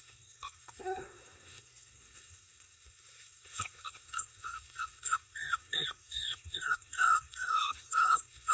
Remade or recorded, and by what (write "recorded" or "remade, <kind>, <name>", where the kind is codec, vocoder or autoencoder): remade, codec, SNAC